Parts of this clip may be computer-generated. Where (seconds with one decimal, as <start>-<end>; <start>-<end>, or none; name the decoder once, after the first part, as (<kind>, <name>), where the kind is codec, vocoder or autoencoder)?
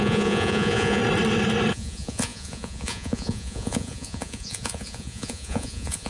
0.0-1.0 (vocoder, Vocos); 1.7-6.1